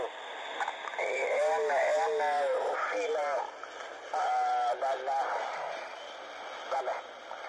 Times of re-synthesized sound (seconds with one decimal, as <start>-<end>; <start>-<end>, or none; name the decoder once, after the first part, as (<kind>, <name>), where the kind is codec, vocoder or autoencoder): none